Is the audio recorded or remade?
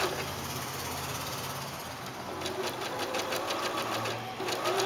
recorded